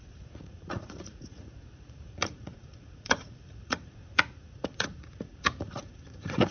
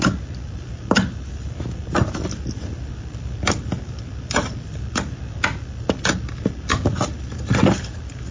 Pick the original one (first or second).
second